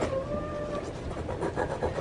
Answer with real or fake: real